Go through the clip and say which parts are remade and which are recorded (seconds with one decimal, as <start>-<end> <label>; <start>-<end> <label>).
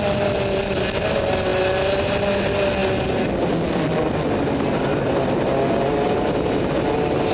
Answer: 0.0-7.3 recorded